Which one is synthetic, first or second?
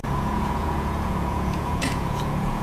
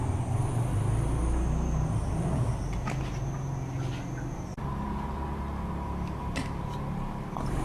first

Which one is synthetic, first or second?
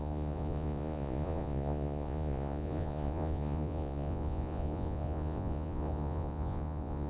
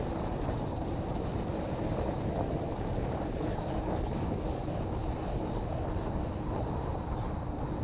first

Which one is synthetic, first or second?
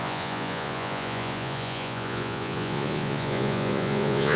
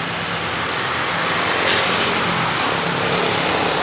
first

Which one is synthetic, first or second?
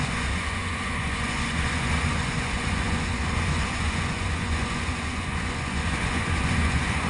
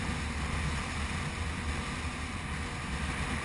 first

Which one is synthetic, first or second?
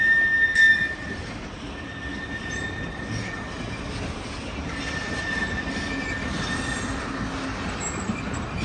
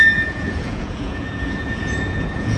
second